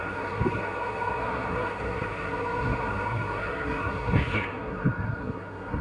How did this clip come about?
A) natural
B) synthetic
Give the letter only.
B